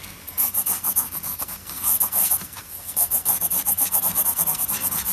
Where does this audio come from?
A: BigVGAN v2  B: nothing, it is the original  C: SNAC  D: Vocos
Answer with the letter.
C